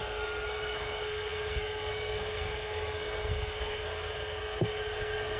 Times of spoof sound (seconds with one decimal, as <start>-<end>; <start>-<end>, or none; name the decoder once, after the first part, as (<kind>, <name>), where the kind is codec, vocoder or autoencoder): 0.0-5.4 (codec, SNAC)